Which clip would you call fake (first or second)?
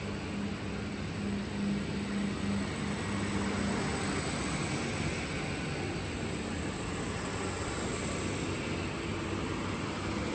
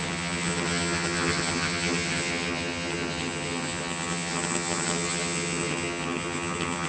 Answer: second